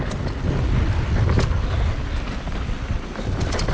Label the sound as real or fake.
real